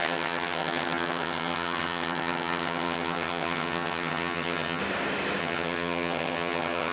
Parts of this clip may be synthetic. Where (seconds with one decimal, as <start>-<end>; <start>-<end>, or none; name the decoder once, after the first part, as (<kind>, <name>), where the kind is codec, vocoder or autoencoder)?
0.0-4.8 (vocoder, HiFi-GAN); 5.4-6.9